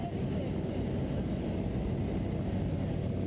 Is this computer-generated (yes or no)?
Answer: no